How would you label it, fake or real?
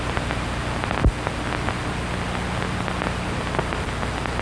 real